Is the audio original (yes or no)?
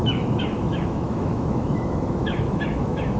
no